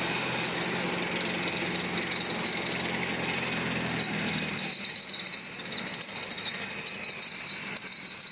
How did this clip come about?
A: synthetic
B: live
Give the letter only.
B